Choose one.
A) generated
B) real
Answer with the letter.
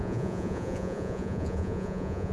A